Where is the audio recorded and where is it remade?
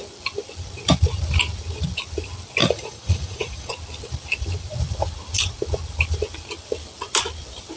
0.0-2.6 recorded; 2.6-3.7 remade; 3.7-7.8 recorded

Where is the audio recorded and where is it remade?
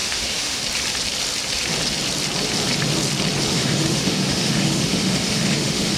0.0-0.6 remade; 0.6-3.5 recorded; 3.5-6.0 remade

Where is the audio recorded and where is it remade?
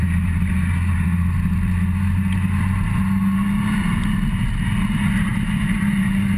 0.0-6.4 recorded